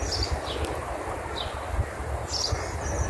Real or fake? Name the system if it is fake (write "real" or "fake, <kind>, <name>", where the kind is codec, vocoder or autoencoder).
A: real